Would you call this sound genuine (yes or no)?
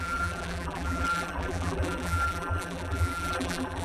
no